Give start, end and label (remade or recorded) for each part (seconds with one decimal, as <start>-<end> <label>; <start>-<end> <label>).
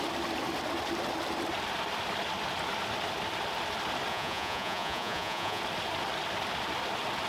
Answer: 0.0-4.1 recorded; 4.1-5.6 remade; 5.6-7.3 recorded